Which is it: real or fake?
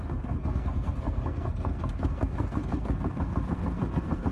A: fake